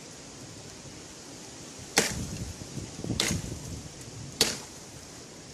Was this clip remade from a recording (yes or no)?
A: yes